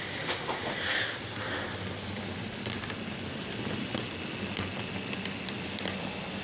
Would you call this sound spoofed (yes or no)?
no